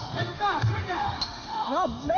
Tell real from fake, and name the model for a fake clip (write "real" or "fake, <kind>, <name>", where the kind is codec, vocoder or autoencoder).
fake, autoencoder, DAC-VAE